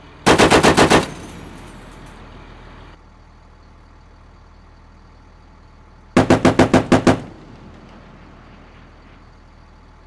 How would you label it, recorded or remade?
recorded